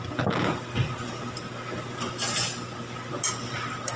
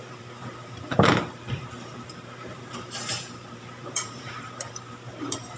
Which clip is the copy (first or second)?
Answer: second